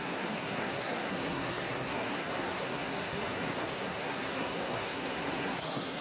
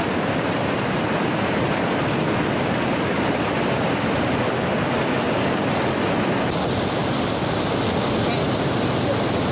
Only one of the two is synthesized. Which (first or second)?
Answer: first